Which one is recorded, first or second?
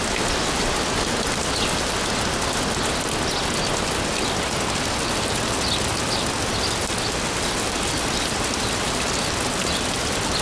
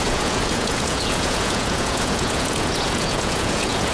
first